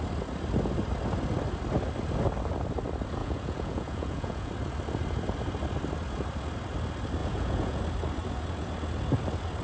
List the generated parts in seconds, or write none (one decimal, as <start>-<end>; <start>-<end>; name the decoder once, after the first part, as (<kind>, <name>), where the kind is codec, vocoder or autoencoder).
3.2-4.5 (vocoder, Vocos); 7.2-7.8